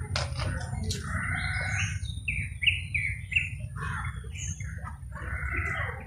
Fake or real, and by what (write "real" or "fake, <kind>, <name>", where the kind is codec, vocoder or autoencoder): real